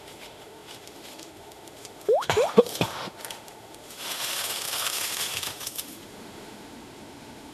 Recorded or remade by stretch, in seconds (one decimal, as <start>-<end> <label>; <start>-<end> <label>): 0.0-7.5 remade